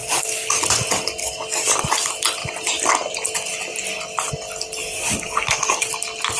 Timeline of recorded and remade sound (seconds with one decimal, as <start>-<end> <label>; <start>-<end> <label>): 0.0-0.6 remade; 0.6-1.2 recorded; 1.2-1.9 remade; 1.9-4.8 recorded; 4.8-5.9 remade; 5.9-6.4 recorded